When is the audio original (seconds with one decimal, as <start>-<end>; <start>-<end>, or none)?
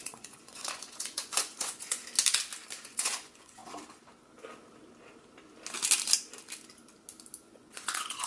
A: 2.0-2.8; 3.6-7.4